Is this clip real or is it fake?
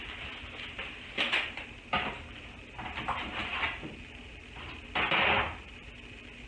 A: real